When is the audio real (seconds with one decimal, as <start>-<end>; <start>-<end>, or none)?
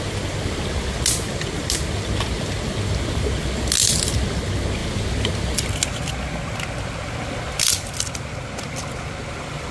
0.0-9.7